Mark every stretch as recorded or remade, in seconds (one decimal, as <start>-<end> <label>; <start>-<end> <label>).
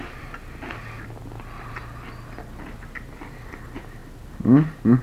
0.0-1.8 remade; 1.8-2.8 recorded; 2.8-4.0 remade; 4.0-5.0 recorded